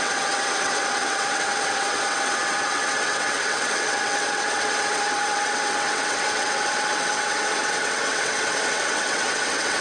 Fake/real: fake